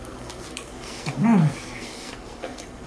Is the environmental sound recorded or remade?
remade